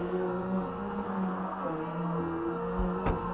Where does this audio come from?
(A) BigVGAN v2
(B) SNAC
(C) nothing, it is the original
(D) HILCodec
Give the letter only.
B